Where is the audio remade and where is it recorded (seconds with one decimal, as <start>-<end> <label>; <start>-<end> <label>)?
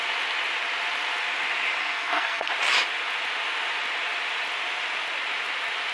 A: 0.0-1.8 recorded; 1.8-2.5 remade; 2.5-5.9 recorded